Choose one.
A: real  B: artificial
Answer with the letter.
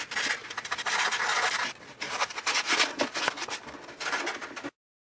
A